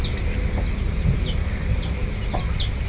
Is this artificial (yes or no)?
no